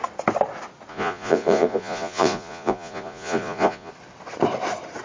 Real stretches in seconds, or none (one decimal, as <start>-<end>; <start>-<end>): 0.0-0.9; 3.9-5.0